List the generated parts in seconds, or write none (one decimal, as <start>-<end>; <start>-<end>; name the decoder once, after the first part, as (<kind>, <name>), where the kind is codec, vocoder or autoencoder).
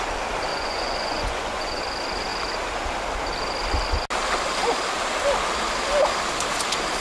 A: 0.5-1.8 (vocoder, Vocos)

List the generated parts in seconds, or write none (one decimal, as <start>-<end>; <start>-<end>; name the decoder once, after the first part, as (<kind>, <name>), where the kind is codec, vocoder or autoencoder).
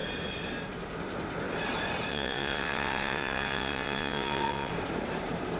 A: 2.1-4.7 (vocoder, WaveNeXt)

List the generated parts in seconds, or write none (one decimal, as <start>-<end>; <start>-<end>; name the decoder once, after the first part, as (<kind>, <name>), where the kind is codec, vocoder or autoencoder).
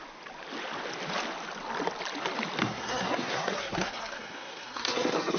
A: 2.6-5.4 (codec, SNAC)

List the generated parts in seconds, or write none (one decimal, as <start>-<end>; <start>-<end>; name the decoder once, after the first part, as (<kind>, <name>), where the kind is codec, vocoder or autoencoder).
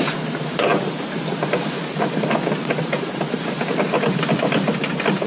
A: none